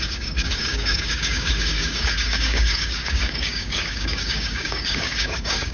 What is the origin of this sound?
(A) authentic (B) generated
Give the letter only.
B